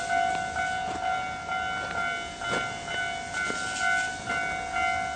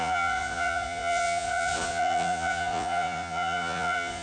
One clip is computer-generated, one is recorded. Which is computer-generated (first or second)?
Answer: second